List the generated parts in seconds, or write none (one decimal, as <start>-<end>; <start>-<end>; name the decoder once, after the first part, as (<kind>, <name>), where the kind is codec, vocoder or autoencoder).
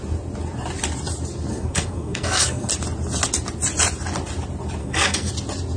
1.5-2.7 (codec, SNAC); 4.8-5.3